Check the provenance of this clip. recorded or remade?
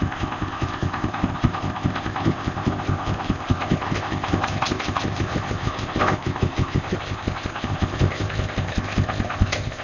remade